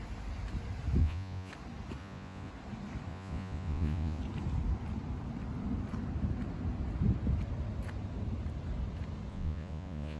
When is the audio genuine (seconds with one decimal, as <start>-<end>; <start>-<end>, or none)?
0.0-1.0; 1.5-2.0; 2.5-3.1; 4.2-9.3